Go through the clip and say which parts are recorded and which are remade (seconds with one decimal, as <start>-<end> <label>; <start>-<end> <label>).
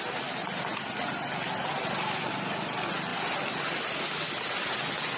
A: 0.0-5.2 recorded